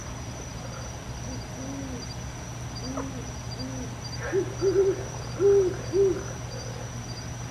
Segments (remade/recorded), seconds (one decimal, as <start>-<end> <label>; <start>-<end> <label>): 0.0-7.5 recorded